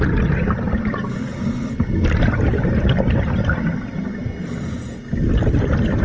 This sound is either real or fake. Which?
real